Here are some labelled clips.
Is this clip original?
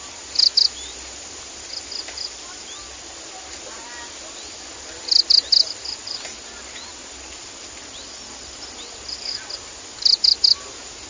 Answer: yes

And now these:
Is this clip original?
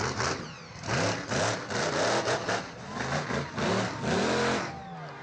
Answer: yes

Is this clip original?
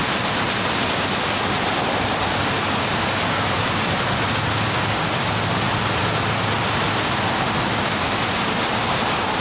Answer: yes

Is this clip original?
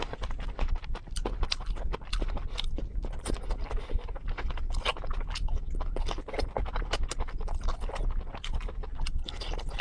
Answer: yes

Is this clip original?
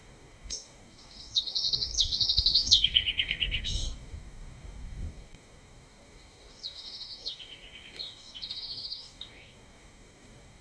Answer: no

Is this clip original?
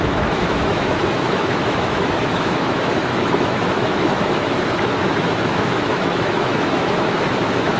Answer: no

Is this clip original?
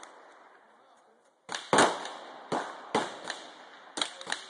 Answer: yes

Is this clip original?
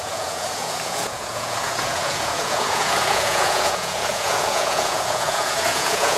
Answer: no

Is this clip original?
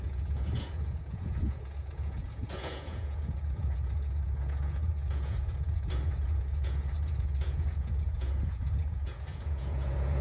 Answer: no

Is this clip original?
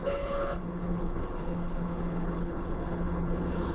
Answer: no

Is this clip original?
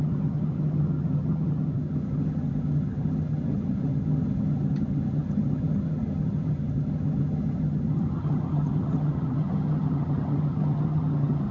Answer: no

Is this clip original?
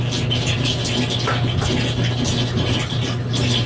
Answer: yes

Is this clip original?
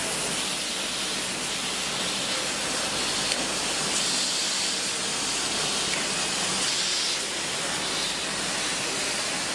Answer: yes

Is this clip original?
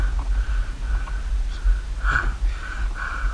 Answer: yes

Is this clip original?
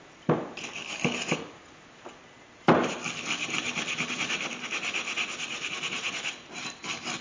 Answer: yes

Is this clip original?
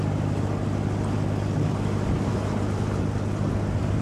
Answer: yes